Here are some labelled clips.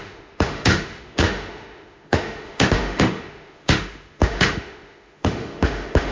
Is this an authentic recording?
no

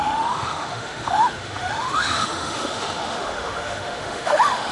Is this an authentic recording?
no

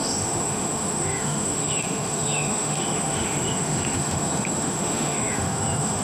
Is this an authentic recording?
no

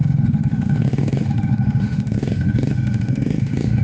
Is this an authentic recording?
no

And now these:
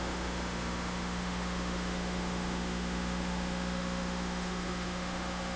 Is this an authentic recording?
no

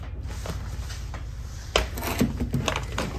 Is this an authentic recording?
yes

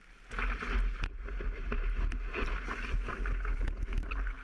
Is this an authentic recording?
yes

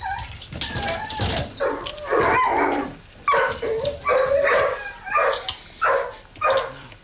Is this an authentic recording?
yes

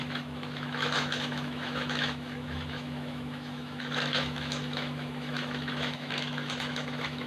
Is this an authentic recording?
no